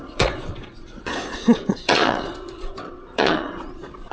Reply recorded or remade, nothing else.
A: remade